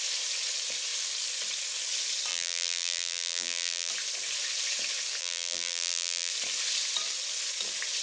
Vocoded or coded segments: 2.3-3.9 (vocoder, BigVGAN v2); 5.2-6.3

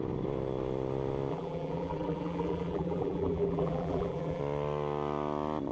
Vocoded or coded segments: 1.3-4.4 (vocoder, BigVGAN v2)

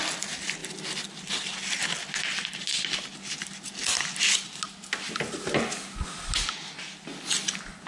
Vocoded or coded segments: none

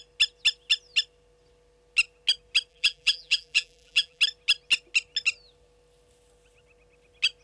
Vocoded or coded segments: 2.7-4.2 (vocoder, BigVGAN v2)

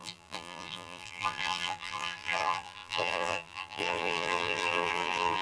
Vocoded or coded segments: 0.0-5.4 (vocoder, BigVGAN v2)

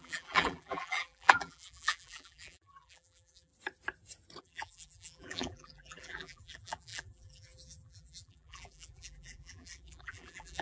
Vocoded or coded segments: 0.0-3.5 (vocoder, BigVGAN v2); 4.4-10.6